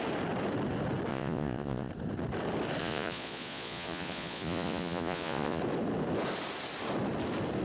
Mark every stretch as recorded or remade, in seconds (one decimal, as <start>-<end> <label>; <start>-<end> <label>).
0.0-1.1 recorded; 1.1-1.9 remade; 1.9-2.8 recorded; 2.8-5.6 remade; 5.6-7.6 recorded

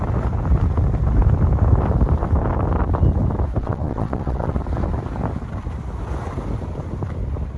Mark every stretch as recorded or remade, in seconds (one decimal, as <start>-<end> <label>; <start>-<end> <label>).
0.0-3.6 recorded; 3.6-4.6 remade; 4.6-7.6 recorded

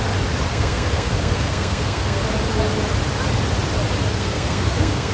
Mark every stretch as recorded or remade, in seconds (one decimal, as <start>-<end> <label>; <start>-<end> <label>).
0.0-0.5 recorded; 0.5-2.2 remade; 2.2-4.1 recorded; 4.1-5.1 remade

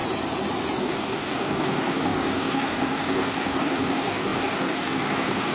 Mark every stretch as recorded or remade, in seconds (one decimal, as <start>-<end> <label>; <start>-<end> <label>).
0.0-0.8 recorded; 0.8-5.5 remade

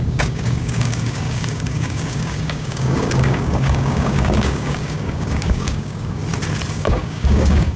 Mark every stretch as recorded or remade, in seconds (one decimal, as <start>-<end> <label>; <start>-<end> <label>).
0.0-6.2 remade; 6.2-6.7 recorded; 6.7-7.8 remade

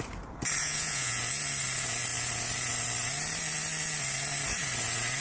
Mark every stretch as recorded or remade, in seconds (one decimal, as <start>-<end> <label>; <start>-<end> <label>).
0.0-0.6 recorded; 0.6-1.2 remade; 1.2-5.2 recorded

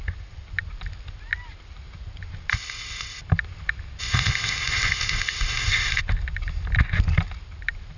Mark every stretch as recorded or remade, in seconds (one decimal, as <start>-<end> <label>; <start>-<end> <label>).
0.0-2.5 recorded; 2.5-3.2 remade; 3.2-4.0 recorded; 4.0-6.0 remade; 6.0-8.0 recorded

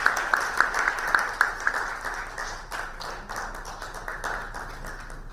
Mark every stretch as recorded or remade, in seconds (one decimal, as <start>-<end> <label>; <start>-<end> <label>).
0.0-1.9 remade; 1.9-2.4 recorded; 2.4-3.5 remade; 3.5-5.3 recorded